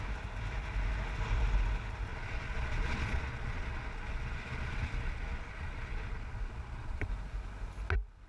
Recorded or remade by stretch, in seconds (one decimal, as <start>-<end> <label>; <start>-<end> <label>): 0.0-2.1 recorded; 2.1-7.1 remade; 7.1-8.3 recorded